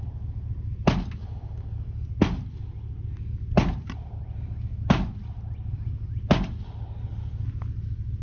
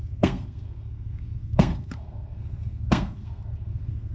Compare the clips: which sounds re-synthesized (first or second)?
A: second